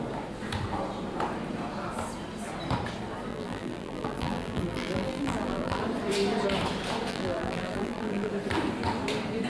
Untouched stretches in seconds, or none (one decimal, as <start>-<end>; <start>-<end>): 0.0-3.3; 5.8-7.1; 8.3-9.5